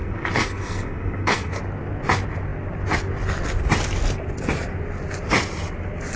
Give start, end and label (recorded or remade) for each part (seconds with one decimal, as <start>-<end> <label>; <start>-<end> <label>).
0.0-1.6 remade; 1.6-6.2 recorded

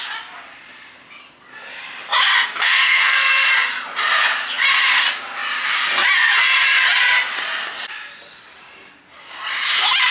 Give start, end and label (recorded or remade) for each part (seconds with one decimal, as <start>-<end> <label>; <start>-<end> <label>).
0.0-2.6 recorded; 2.6-3.3 remade; 3.3-10.1 recorded